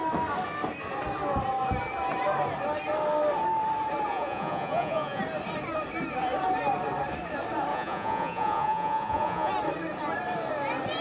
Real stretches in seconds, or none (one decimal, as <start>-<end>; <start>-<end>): 0.0-4.1; 5.2-7.7; 9.5-11.0